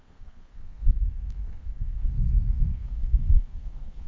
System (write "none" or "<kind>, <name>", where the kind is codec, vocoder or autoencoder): codec, SNAC